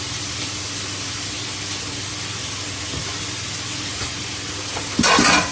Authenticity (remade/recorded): recorded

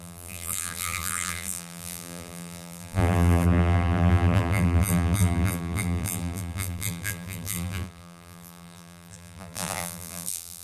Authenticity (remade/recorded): remade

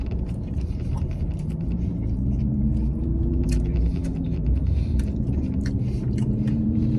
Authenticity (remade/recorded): remade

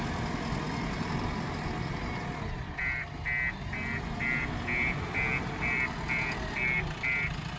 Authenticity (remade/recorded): recorded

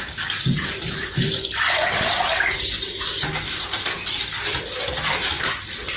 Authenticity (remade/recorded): recorded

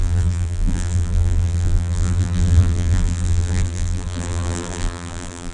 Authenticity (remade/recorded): remade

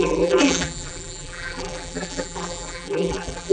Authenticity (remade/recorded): remade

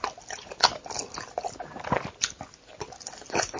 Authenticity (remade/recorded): remade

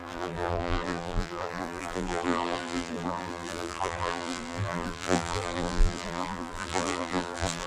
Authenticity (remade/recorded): remade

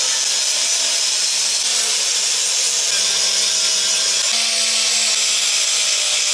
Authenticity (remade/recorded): recorded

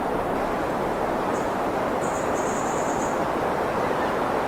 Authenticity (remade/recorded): remade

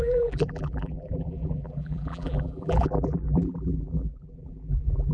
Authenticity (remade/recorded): remade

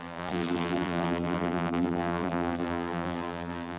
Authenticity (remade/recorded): remade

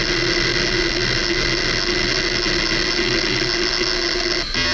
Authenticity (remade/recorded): recorded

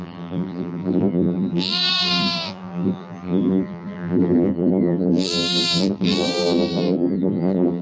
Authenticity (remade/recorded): remade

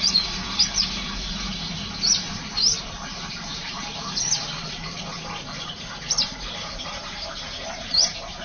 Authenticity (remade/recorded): remade